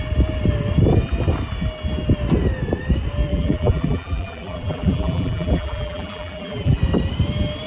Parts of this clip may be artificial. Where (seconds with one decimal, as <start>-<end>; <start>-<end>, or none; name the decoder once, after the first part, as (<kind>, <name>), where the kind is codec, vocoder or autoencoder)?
3.3-6.8 (vocoder, BigVGAN v2)